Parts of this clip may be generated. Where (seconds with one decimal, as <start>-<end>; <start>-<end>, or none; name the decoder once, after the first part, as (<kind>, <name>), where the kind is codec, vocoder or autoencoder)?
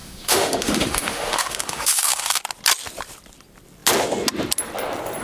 0.0-2.4 (autoencoder, DAC-VAE)